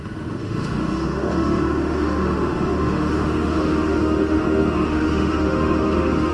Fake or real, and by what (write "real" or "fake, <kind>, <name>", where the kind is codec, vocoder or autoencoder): fake, autoencoder, DAC-VAE